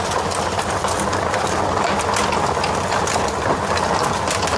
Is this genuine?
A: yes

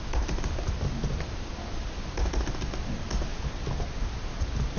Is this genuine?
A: yes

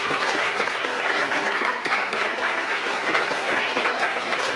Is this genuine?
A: no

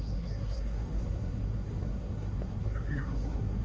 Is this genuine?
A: no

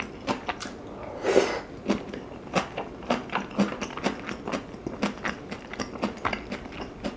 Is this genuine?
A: yes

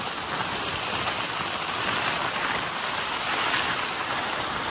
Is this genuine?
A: yes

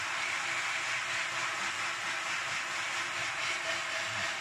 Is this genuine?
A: yes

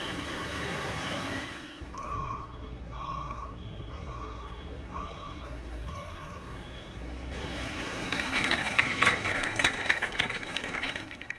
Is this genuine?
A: no